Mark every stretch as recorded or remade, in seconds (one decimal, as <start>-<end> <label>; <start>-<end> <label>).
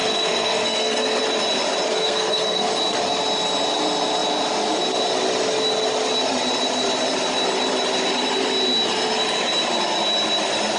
0.0-1.2 remade; 1.2-1.9 recorded; 1.9-2.7 remade; 2.7-10.8 recorded